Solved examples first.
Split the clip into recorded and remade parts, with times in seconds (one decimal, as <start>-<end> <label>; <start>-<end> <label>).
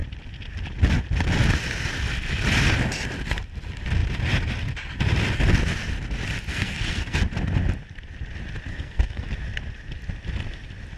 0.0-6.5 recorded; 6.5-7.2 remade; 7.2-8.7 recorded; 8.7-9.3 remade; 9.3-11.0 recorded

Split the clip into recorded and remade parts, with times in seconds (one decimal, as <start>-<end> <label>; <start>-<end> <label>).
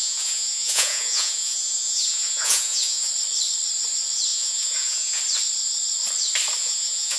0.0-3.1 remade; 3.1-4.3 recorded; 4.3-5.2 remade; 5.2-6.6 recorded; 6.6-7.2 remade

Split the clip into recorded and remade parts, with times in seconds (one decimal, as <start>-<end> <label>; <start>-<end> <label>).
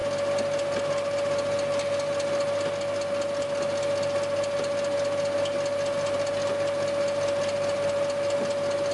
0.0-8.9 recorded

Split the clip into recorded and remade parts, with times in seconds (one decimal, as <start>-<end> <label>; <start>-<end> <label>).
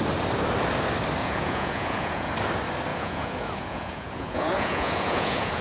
0.0-1.2 recorded; 1.2-2.3 remade; 2.3-2.9 recorded; 2.9-5.6 remade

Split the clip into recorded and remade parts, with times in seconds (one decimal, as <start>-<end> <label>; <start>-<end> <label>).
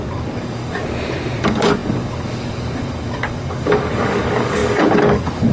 0.0-0.8 remade; 0.8-1.4 recorded; 1.4-5.5 remade